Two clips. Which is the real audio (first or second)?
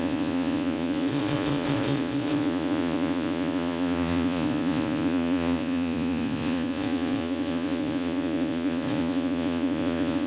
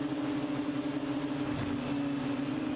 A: second